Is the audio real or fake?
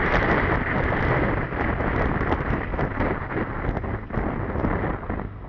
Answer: real